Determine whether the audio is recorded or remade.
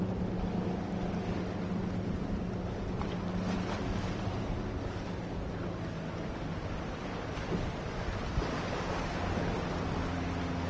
recorded